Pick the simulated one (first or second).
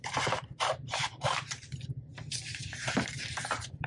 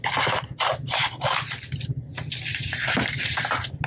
first